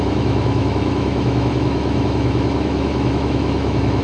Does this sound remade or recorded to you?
remade